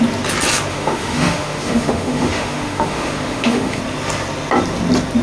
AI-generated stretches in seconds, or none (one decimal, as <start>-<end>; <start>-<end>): 0.7-3.8